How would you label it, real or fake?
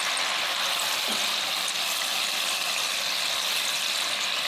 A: real